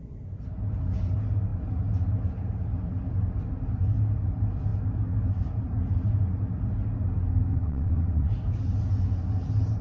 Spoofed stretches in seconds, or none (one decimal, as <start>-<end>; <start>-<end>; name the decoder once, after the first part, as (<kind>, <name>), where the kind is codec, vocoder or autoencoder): 7.5-8.3 (vocoder, WaveNeXt)